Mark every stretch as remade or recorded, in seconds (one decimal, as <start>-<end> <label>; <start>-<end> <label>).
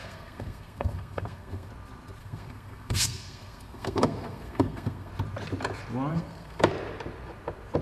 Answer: 0.0-1.7 remade; 1.7-2.2 recorded; 2.2-5.1 remade; 5.1-6.1 recorded; 6.1-6.7 remade; 6.7-7.8 recorded